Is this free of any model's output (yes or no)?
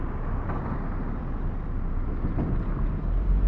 yes